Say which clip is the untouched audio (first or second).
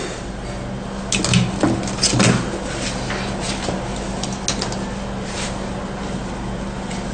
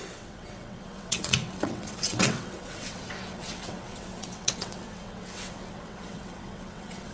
first